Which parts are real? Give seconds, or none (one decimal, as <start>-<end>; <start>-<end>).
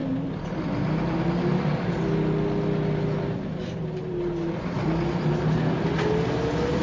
0.0-6.8